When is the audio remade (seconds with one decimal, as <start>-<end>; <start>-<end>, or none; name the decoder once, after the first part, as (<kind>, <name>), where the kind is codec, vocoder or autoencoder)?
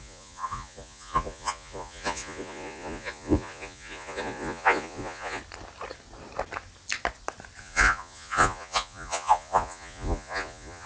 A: 0.0-5.4 (vocoder, Vocos); 7.6-10.9